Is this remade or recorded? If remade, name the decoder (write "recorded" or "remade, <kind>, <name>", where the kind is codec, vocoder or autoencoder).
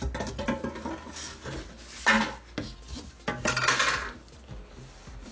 recorded